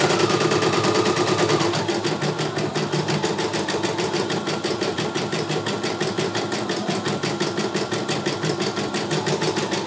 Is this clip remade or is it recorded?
remade